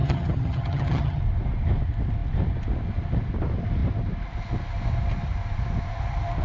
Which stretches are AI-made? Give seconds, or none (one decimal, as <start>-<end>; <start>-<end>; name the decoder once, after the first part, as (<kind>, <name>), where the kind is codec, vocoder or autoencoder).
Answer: 0.0-1.2 (vocoder, HiFi-GAN)